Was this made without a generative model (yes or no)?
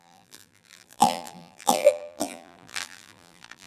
no